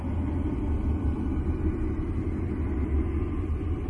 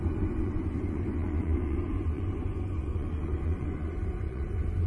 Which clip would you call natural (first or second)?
first